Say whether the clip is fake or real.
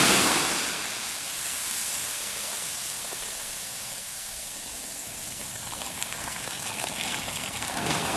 fake